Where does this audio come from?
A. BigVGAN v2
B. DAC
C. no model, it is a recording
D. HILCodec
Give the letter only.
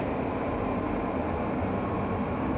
C